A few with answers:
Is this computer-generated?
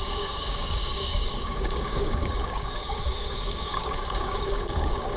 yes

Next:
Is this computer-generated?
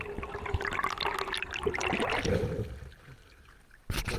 no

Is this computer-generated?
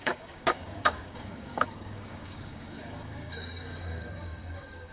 yes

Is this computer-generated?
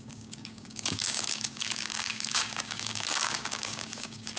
yes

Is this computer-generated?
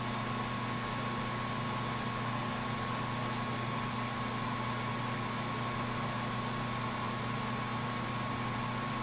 no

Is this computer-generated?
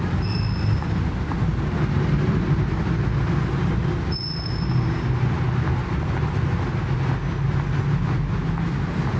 no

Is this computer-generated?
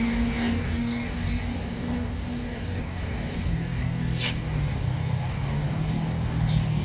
yes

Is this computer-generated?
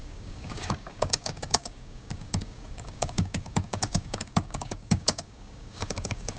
yes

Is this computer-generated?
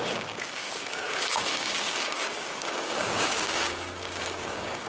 yes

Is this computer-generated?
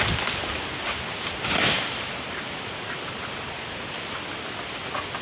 no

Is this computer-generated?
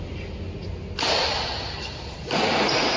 no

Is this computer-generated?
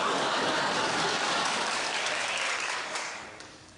yes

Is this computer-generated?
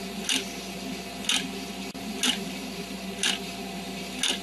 no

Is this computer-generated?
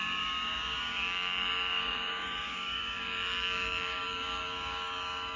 yes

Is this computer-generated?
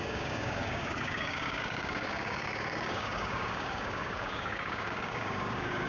yes